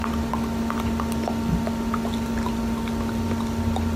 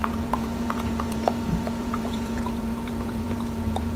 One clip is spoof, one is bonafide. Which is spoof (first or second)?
second